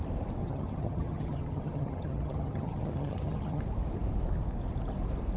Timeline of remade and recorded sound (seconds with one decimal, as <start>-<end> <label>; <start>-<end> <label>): 0.0-0.4 recorded; 0.4-3.6 remade; 3.6-5.4 recorded